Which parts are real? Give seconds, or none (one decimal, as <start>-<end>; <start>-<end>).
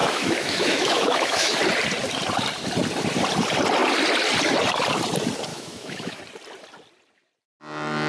1.6-5.5; 6.2-8.1